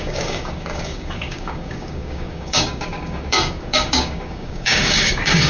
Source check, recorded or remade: remade